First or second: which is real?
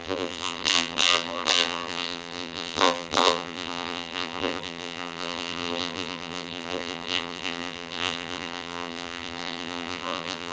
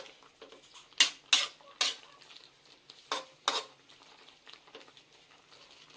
second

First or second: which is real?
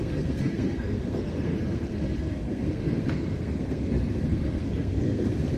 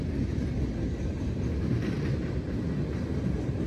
second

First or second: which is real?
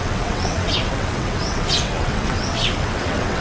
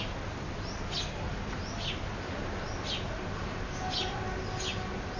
second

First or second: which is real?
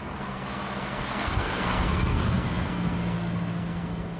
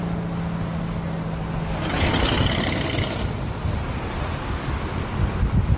second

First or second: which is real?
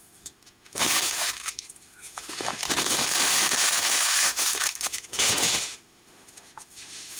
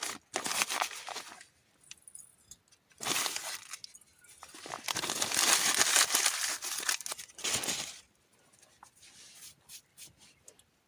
second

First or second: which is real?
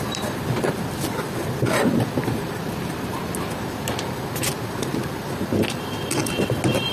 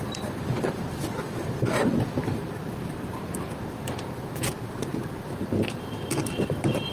first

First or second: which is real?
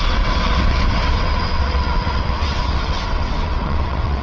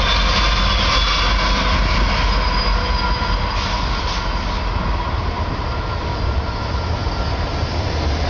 second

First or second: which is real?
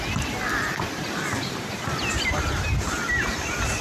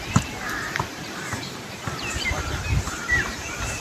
first